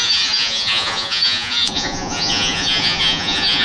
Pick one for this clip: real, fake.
fake